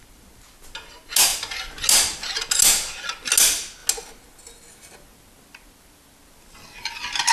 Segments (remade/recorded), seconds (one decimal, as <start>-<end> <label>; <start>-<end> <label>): 0.0-7.3 recorded